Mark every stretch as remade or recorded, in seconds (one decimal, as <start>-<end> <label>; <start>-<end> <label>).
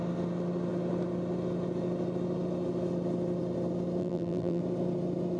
0.0-4.0 recorded; 4.0-4.6 remade; 4.6-5.4 recorded